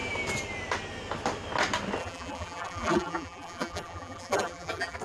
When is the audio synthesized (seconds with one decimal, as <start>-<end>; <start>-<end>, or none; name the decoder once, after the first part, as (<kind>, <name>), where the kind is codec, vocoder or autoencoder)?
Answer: 2.0-5.0 (vocoder, BigVGAN v2)

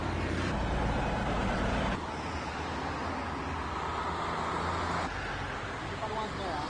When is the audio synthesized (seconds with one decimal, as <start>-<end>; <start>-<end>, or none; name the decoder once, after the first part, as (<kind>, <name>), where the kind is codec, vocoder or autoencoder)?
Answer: 0.0-3.1 (vocoder, BigVGAN v2)

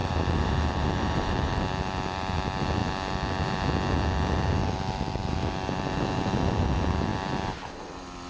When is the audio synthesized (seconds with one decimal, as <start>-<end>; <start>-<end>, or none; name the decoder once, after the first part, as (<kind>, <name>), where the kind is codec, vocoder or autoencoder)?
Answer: 0.0-1.6 (vocoder, BigVGAN v2)

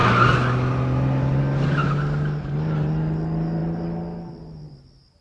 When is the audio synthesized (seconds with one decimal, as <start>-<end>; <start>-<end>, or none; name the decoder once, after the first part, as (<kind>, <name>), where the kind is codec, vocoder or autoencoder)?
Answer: none

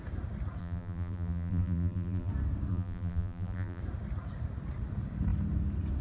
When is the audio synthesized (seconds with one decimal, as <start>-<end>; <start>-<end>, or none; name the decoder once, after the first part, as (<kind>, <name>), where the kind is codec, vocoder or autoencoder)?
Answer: 0.6-2.3 (vocoder, BigVGAN v2); 2.7-3.8

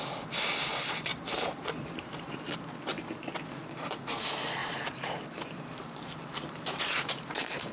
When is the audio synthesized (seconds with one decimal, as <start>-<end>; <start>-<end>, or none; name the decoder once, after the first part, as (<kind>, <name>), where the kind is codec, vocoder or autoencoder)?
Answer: 1.1-2.1 (vocoder, BigVGAN v2); 4.6-7.7